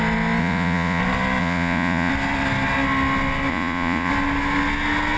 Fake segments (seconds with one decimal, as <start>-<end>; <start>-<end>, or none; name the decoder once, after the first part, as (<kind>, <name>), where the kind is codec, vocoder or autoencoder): 0.4-1.0 (vocoder, Vocos); 1.4-2.1; 3.5-4.1

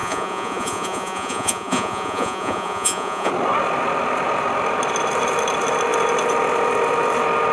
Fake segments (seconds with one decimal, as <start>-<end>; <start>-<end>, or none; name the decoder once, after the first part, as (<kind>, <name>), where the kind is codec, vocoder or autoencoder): 0.0-3.3 (vocoder, Vocos)

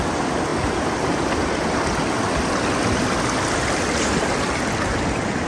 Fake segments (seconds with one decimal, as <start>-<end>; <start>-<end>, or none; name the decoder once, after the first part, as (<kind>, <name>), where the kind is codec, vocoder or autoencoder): none

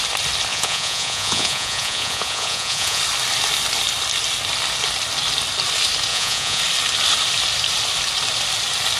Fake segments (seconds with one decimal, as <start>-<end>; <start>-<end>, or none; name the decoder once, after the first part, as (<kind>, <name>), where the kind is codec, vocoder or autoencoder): 0.5-3.0 (vocoder, Vocos); 6.1-6.6

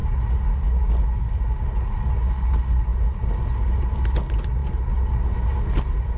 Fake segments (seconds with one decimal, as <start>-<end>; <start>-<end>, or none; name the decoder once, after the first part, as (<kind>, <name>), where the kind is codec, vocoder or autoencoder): none

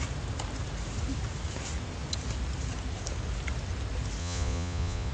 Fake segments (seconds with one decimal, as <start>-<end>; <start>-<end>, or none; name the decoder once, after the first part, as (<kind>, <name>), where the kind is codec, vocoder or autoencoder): 4.2-5.1 (vocoder, Vocos)